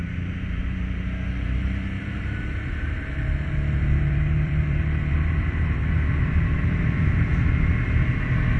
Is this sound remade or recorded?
remade